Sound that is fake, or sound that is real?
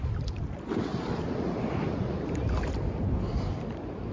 real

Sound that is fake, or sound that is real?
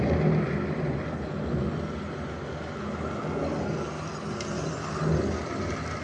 real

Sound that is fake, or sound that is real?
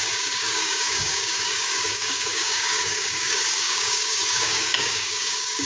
fake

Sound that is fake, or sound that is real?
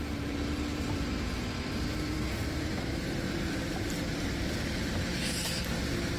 fake